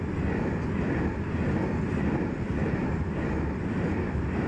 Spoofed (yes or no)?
no